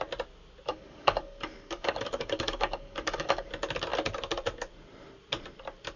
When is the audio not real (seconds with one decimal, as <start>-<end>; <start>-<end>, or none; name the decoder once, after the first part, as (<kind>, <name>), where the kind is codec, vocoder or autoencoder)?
0.7-3.5 (codec, DAC)